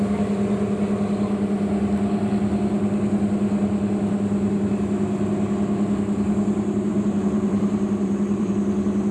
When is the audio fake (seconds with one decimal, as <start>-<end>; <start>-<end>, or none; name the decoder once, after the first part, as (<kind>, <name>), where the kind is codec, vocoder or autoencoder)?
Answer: 6.9-8.5 (vocoder, BigVGAN v2)